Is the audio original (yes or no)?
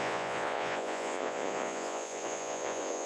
no